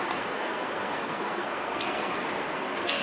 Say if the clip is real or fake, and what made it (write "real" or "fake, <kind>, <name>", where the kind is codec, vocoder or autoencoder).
fake, codec, SNAC